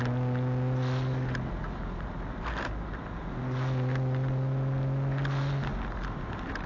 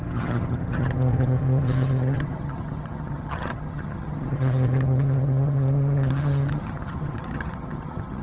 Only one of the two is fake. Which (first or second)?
second